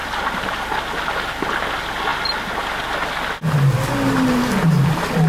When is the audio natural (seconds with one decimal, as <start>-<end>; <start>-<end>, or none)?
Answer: 0.0-5.3

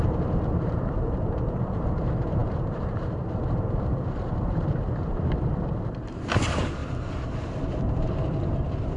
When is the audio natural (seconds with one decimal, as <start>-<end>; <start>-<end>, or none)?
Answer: 6.8-7.9

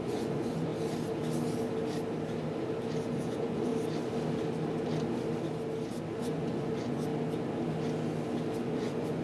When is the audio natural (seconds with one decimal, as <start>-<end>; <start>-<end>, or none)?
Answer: 0.7-3.1; 3.7-6.2; 7.1-8.6